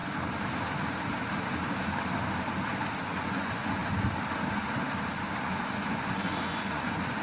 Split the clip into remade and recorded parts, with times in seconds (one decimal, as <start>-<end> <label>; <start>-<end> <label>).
0.0-3.0 recorded; 3.0-3.8 remade; 3.8-5.4 recorded; 5.4-7.2 remade